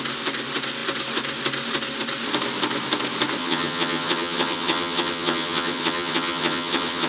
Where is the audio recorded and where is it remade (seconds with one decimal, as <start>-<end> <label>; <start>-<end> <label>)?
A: 0.0-3.4 recorded; 3.4-7.1 remade